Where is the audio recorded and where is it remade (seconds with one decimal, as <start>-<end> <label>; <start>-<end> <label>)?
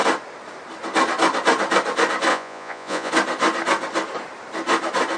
0.0-2.3 recorded; 2.3-3.1 remade; 3.1-5.2 recorded